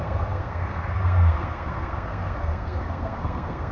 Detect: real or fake fake